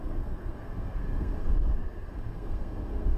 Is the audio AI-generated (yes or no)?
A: yes